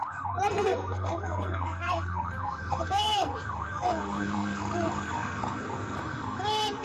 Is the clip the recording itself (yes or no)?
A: no